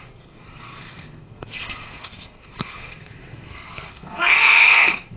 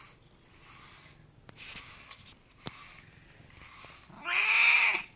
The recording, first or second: second